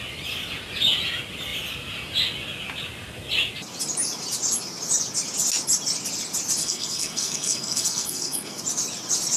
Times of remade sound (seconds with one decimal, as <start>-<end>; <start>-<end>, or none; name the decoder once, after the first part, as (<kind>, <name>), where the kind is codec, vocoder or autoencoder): 6.6-8.6 (codec, SNAC)